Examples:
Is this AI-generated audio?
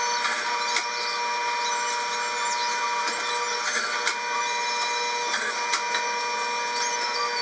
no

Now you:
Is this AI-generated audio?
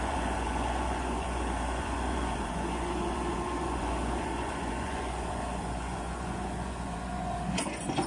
yes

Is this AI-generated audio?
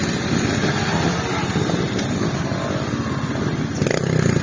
no